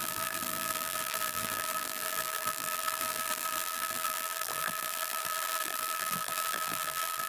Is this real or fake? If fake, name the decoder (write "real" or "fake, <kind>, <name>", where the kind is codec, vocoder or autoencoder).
fake, vocoder, BigVGAN v2